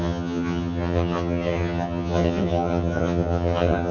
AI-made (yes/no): yes